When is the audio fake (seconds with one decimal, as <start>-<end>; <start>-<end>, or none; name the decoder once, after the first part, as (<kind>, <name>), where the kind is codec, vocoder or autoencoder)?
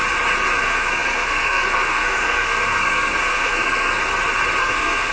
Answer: 0.6-4.0 (codec, SNAC); 4.6-5.1